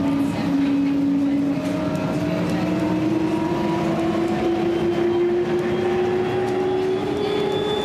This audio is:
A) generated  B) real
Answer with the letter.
B